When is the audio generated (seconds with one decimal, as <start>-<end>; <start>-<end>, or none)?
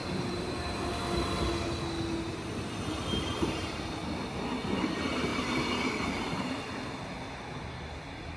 0.0-1.0; 3.3-3.9